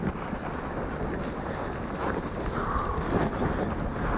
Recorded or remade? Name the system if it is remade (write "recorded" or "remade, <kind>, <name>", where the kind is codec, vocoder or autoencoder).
recorded